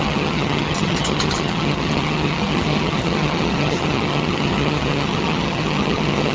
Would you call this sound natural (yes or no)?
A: no